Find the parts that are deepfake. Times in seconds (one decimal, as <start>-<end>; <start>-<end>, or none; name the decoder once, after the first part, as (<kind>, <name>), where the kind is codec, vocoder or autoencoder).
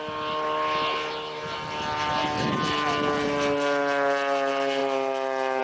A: none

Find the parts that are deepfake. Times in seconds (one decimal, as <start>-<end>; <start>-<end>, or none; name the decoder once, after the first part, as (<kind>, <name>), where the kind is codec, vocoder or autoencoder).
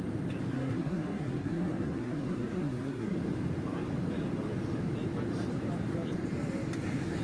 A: 0.5-3.2 (codec, SNAC)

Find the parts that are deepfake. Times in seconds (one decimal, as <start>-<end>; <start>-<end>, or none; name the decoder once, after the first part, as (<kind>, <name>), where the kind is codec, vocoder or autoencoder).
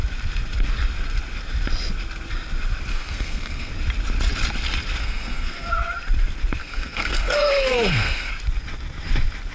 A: 2.9-3.7 (codec, SNAC); 5.0-5.7; 6.6-8.3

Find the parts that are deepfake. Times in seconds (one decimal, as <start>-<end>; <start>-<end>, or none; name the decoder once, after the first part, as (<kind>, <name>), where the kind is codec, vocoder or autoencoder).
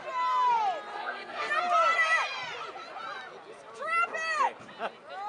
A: 0.9-1.5 (codec, SNAC)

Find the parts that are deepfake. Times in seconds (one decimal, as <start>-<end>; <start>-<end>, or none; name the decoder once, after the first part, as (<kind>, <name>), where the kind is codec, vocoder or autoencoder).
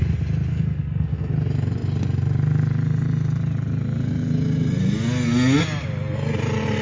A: 0.5-1.3 (codec, SNAC)